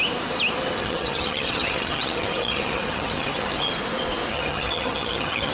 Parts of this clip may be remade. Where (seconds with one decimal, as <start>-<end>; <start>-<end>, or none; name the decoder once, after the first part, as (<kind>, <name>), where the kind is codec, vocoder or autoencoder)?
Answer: 0.8-3.7 (vocoder, HiFi-GAN); 4.3-5.5